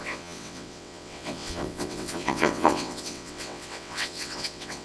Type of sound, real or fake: fake